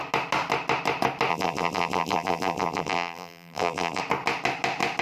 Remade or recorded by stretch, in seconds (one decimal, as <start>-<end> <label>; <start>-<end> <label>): 0.0-1.3 recorded; 1.3-4.0 remade; 4.0-5.0 recorded